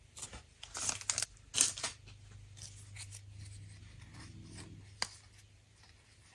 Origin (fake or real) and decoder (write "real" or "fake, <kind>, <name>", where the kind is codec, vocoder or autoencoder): real